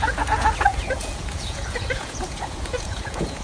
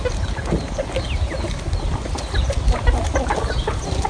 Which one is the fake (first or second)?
first